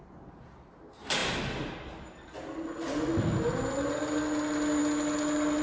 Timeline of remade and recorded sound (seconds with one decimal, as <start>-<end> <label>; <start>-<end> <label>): 0.0-5.6 recorded